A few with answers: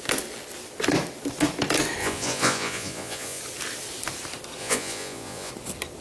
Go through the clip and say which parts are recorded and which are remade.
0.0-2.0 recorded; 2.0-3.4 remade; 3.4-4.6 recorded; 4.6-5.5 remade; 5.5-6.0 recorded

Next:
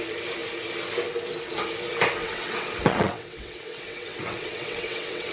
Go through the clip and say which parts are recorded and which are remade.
0.0-2.2 recorded; 2.2-5.3 remade

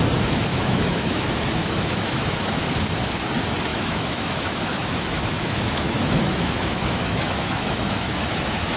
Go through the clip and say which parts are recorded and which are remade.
0.0-0.5 recorded; 0.5-2.6 remade; 2.6-3.7 recorded; 3.7-8.8 remade

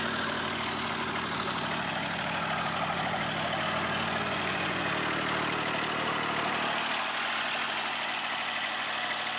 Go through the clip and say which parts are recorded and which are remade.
0.0-4.9 remade; 4.9-7.0 recorded; 7.0-9.4 remade

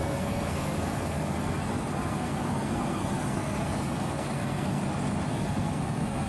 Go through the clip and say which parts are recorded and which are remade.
0.0-4.8 remade; 4.8-5.3 recorded; 5.3-6.3 remade

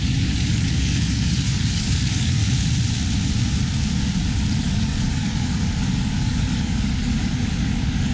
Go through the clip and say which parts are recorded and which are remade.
0.0-2.4 remade; 2.4-4.6 recorded; 4.6-8.1 remade

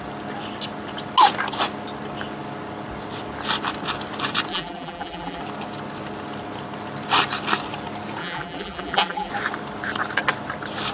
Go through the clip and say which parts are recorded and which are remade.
0.0-4.5 recorded; 4.5-5.4 remade; 5.4-8.2 recorded; 8.2-9.3 remade; 9.3-10.9 recorded